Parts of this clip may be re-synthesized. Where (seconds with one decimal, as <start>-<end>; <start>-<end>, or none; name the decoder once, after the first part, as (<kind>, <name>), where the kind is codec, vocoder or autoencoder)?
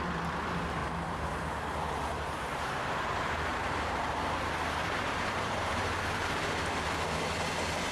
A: 0.8-3.0 (vocoder, BigVGAN v2); 3.5-5.7